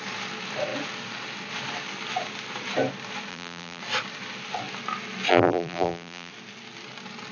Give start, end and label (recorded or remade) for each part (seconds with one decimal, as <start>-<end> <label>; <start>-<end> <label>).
0.0-3.3 recorded; 3.3-3.8 remade; 3.8-5.3 recorded; 5.3-6.3 remade; 6.3-7.3 recorded